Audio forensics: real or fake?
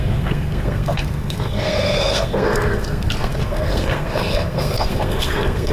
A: fake